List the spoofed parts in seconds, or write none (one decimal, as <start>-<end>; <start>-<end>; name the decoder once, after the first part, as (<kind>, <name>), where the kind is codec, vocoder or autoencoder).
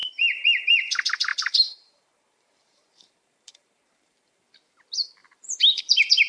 1.3-4.4 (vocoder, BigVGAN v2); 5.2-5.8